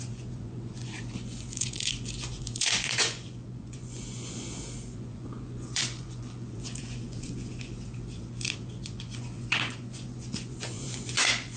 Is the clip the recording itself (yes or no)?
no